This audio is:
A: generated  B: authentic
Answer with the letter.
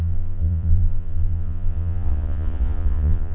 A